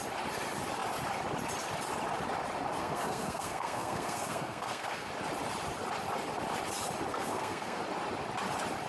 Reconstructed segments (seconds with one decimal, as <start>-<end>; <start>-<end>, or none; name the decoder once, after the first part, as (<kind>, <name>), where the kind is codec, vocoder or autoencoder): 2.8-5.1 (codec, SNAC); 7.1-7.8